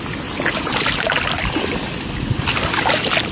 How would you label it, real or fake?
real